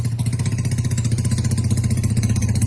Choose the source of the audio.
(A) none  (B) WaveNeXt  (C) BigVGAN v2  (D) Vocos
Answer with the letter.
A